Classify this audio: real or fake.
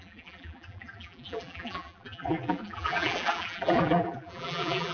fake